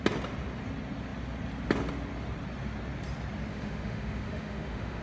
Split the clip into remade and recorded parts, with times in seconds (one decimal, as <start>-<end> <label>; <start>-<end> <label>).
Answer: 0.0-3.5 recorded; 3.5-5.0 remade